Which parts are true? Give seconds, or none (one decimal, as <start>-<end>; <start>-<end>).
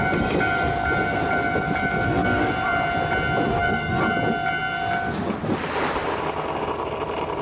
0.0-1.8; 2.5-3.5; 4.0-7.4